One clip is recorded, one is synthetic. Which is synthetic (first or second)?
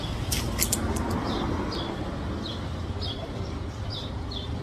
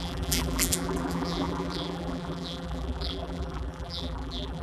second